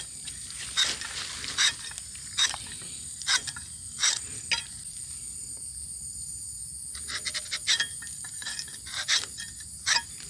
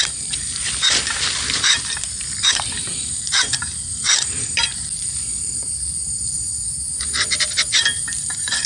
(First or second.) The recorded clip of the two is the first